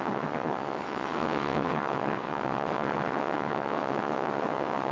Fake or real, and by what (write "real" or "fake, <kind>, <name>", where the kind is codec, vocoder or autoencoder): fake, vocoder, WaveNeXt